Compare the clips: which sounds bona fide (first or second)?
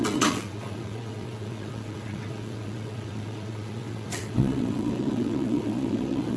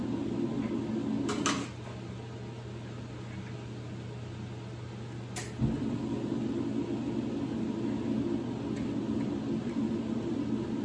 second